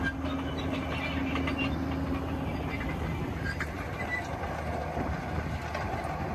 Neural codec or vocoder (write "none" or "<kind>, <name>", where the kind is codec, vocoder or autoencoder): none